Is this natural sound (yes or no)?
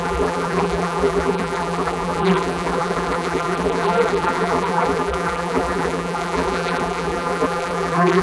no